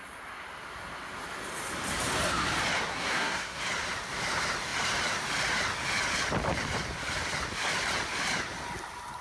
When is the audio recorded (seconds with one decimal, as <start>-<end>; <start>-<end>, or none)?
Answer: 0.0-2.9; 3.6-9.2